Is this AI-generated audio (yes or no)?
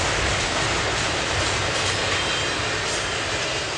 no